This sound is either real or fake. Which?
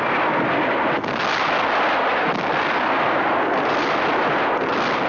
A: real